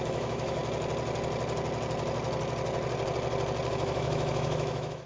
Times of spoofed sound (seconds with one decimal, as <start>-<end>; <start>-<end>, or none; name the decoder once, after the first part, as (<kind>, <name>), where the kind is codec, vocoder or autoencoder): 0.0-0.6 (autoencoder, DAC-VAE); 3.7-5.1